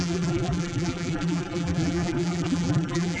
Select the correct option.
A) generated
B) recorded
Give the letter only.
A